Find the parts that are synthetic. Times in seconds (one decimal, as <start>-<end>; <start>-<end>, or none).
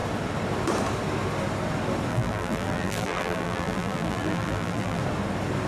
2.1-5.0